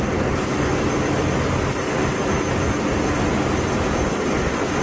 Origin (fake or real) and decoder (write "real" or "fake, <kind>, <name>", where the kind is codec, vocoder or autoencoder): real